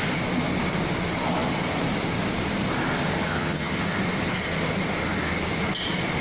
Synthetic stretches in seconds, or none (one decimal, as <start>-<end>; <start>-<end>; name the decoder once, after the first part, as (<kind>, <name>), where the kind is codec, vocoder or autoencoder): 3.3-3.8 (vocoder, HiFi-GAN)